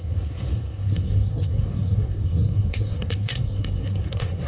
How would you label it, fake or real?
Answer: fake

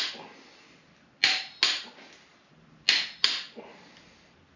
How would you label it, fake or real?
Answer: real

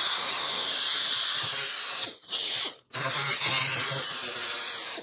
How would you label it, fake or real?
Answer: real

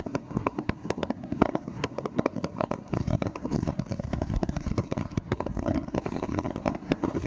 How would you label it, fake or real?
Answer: fake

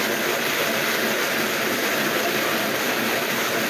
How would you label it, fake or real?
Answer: real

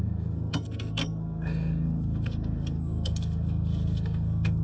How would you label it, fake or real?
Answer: fake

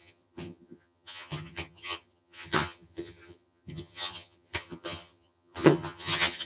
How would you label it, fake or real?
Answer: fake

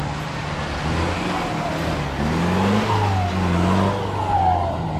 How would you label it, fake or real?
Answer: real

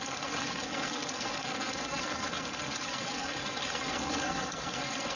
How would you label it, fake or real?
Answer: fake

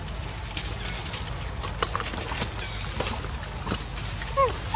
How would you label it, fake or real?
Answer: real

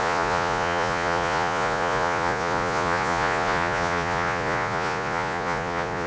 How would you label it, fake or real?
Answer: fake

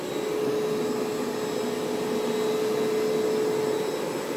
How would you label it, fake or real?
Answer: real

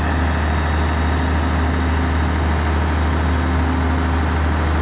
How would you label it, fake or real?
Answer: real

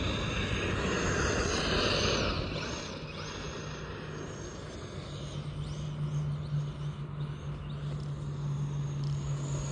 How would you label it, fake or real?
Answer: real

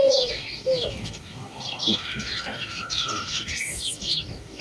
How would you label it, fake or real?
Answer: fake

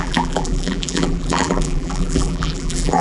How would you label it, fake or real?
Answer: fake